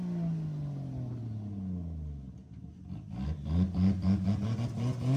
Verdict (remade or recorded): recorded